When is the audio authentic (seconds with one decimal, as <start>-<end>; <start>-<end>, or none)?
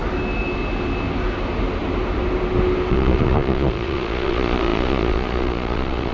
0.0-2.9